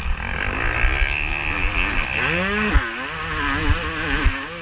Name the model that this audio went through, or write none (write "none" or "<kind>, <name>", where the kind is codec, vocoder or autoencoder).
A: none